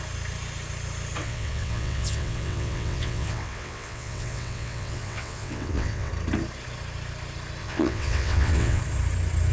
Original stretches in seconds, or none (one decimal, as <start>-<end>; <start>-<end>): 0.0-1.2; 6.1-7.6; 8.8-9.5